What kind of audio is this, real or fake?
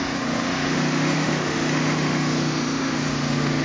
fake